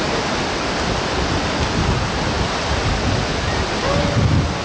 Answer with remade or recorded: recorded